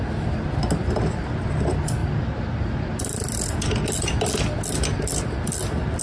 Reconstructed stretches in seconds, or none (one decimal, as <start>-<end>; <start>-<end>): none